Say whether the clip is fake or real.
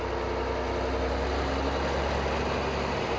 real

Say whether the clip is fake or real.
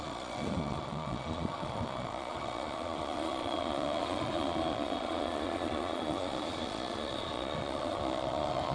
fake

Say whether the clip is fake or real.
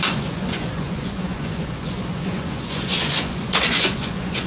fake